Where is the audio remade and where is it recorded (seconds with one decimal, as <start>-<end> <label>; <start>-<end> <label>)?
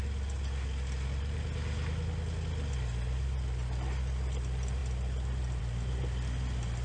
0.0-6.8 recorded